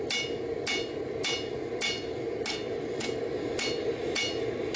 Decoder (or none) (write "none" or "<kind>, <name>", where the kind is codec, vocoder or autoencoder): none